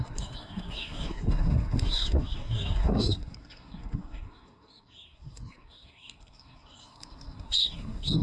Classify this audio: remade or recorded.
remade